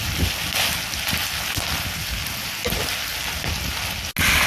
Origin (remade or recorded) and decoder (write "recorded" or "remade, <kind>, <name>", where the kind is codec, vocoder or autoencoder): recorded